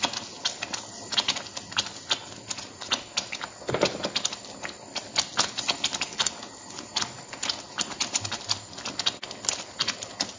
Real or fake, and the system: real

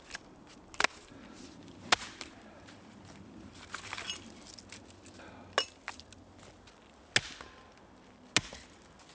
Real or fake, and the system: real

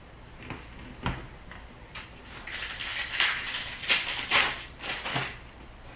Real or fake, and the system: real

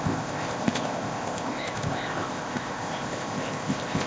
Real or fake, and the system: fake, codec, ZipCodec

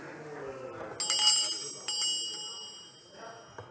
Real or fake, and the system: real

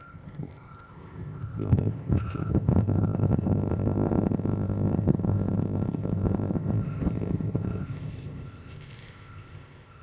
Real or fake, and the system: fake, codec, ZipCodec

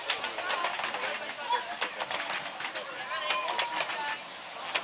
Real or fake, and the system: real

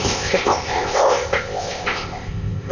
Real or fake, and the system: fake, codec, ZipCodec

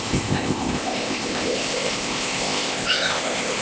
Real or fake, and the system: fake, codec, ZipCodec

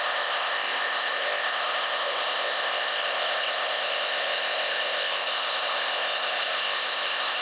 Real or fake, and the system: fake, codec, ZipCodec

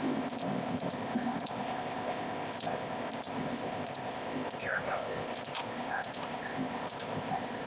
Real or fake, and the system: fake, codec, ZipCodec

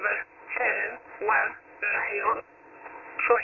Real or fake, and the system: fake, codec, ZipCodec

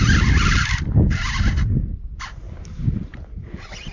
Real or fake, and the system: real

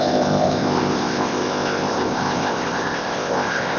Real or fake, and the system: fake, codec, ZipCodec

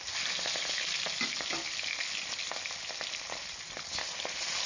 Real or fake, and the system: real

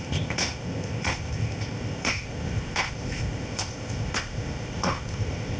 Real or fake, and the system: fake, codec, ZipCodec